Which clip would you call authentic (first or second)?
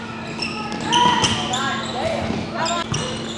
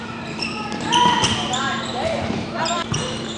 first